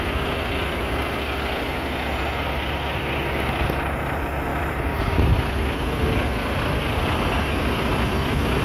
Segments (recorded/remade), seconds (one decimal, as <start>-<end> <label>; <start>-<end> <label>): 0.0-4.5 recorded; 4.5-5.0 remade; 5.0-8.6 recorded